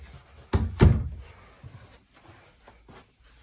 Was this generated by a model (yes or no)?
no